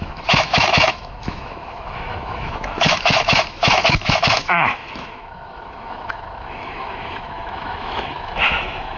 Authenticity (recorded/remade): remade